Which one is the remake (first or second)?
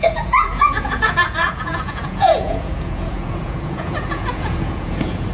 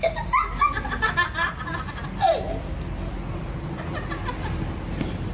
first